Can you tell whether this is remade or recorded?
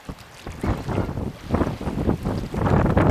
recorded